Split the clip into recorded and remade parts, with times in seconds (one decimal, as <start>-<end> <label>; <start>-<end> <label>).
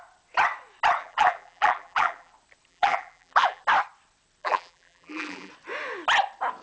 0.0-1.0 recorded; 1.0-2.3 remade; 2.3-2.7 recorded; 2.7-3.6 remade; 3.6-4.4 recorded; 4.4-5.5 remade; 5.5-6.6 recorded